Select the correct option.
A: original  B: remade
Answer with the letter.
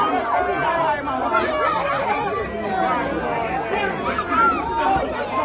A